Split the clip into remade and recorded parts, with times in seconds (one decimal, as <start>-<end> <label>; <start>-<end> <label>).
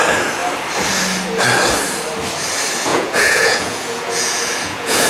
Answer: 0.0-2.9 recorded; 2.9-5.1 remade